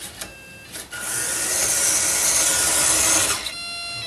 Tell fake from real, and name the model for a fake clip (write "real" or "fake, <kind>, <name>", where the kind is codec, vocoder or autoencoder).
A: real